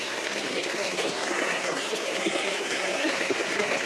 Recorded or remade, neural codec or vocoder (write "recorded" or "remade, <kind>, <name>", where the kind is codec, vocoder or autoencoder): remade, codec, SNAC